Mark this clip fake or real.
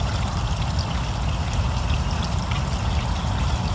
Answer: real